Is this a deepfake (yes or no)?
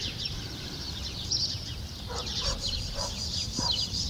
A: yes